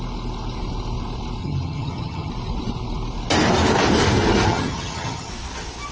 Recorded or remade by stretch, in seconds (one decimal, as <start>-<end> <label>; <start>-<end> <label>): 0.0-1.4 recorded; 1.4-2.3 remade; 2.3-4.5 recorded; 4.5-5.3 remade; 5.3-5.9 recorded